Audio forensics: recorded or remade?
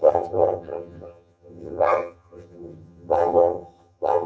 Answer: remade